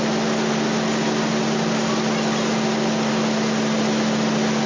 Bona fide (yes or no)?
yes